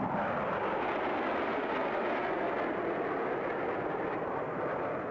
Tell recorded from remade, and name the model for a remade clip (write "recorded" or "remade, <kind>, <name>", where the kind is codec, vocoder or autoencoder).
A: recorded